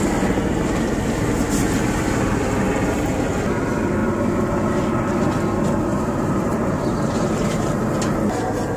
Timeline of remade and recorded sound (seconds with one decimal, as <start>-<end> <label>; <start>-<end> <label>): 0.0-5.9 recorded; 5.9-7.8 remade; 7.8-8.8 recorded